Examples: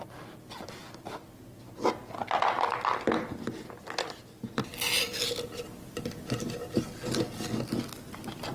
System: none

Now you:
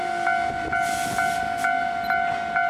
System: none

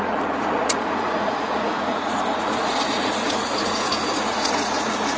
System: vocoder, Vocos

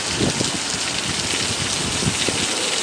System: none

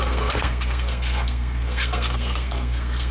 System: codec, SNAC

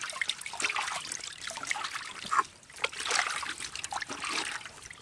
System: none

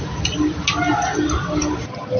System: none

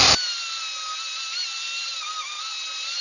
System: none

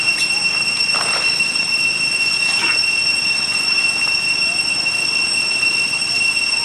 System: none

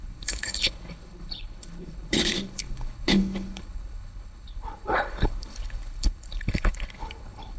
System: codec, HILCodec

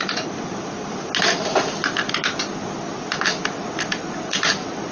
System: none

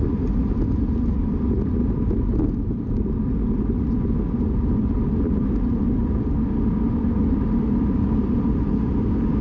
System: none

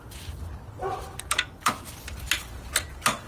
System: none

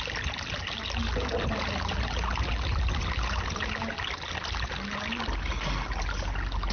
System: none